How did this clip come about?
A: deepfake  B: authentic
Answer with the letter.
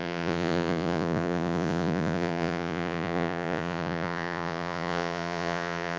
A